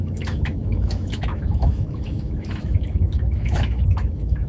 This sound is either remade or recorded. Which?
remade